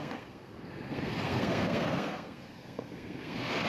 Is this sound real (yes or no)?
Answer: no